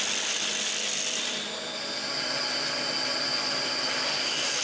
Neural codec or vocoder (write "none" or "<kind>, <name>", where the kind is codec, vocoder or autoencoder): none